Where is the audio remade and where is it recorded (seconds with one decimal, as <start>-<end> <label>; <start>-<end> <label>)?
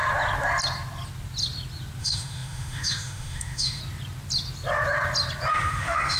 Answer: 0.0-2.0 recorded; 2.0-3.8 remade; 3.8-5.5 recorded; 5.5-6.2 remade